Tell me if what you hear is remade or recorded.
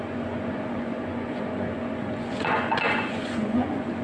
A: remade